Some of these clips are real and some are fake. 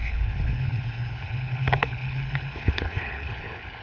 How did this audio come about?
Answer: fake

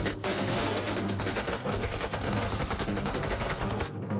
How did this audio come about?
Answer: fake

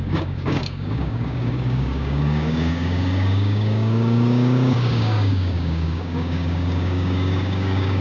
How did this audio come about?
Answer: fake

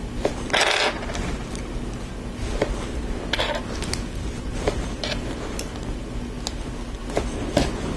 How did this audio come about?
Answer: real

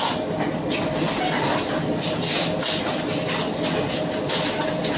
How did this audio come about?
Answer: real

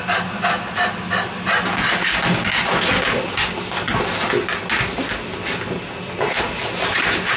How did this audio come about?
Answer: real